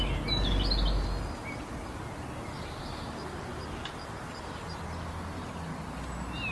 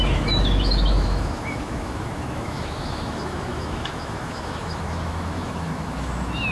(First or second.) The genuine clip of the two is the first